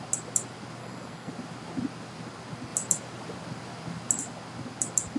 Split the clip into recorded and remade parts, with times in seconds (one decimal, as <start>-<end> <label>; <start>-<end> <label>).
0.0-0.8 recorded; 0.8-1.3 remade; 1.3-5.2 recorded